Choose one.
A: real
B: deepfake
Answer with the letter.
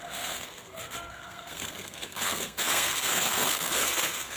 B